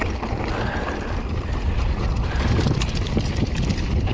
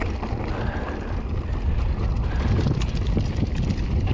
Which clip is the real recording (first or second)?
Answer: second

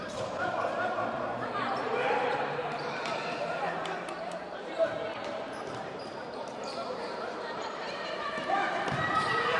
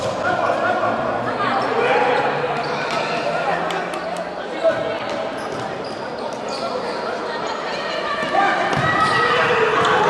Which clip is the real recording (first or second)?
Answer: second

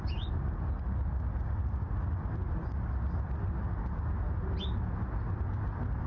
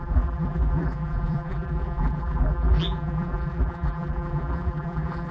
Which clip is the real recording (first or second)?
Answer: first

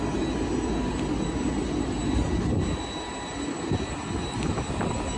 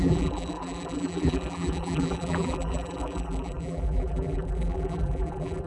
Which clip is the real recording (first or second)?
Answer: first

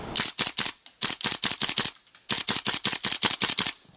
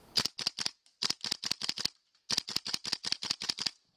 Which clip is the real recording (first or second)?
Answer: first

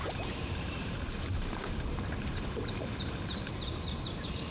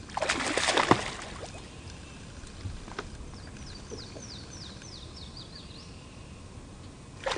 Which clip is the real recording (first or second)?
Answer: second